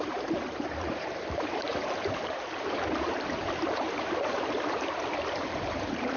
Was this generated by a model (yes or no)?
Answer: yes